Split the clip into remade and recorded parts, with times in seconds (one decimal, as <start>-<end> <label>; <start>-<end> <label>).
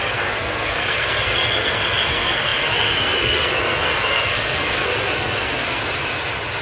0.0-5.8 remade; 5.8-6.6 recorded